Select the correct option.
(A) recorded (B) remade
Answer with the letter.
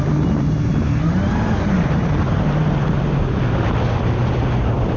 B